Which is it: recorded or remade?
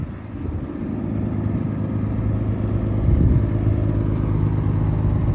recorded